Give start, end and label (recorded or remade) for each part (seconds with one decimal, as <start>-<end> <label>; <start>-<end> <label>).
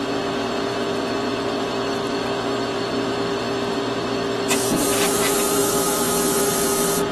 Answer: 0.0-5.6 recorded; 5.6-6.5 remade; 6.5-7.1 recorded